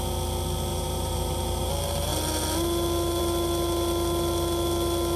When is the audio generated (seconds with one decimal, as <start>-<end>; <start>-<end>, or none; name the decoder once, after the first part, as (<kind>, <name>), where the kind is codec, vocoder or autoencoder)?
0.7-1.7 (vocoder, BigVGAN v2)